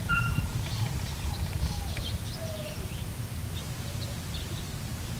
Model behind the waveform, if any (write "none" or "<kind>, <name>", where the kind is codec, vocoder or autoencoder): vocoder, BigVGAN v2